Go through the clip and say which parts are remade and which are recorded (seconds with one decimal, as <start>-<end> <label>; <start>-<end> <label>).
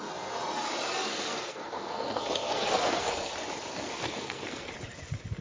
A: 0.0-1.1 recorded; 1.1-3.3 remade; 3.3-3.7 recorded; 3.7-4.7 remade; 4.7-5.4 recorded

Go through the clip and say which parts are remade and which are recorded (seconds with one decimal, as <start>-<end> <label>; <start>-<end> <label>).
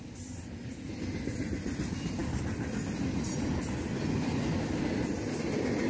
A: 0.0-5.9 recorded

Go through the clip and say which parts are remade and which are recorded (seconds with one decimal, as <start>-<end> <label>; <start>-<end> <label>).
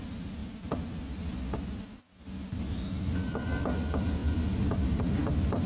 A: 0.0-5.7 recorded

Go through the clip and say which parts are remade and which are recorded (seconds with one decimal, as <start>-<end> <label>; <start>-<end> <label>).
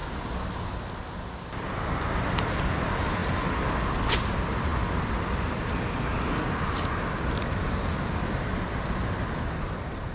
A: 0.0-10.1 recorded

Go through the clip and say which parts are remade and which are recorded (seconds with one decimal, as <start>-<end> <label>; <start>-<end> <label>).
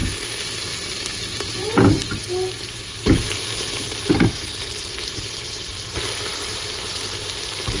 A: 0.0-7.8 recorded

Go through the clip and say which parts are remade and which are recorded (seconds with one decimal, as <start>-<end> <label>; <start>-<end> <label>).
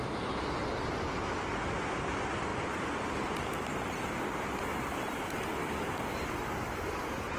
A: 0.0-7.4 recorded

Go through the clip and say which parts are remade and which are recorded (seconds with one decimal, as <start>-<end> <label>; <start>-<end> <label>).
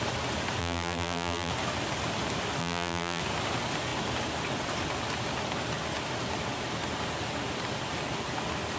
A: 0.0-0.6 recorded; 0.6-1.5 remade; 1.5-2.6 recorded; 2.6-3.2 remade; 3.2-8.8 recorded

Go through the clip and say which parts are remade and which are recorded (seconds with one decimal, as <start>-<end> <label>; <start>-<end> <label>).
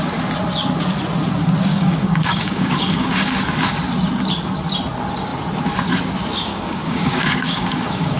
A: 0.0-1.7 recorded; 1.7-3.4 remade; 3.4-6.5 recorded; 6.5-8.2 remade